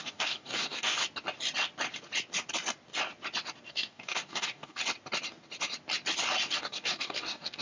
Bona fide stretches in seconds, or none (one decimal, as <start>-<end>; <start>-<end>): 1.0-3.7; 4.8-6.6